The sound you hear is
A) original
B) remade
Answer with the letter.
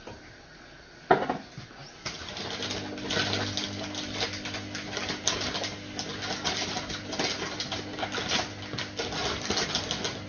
A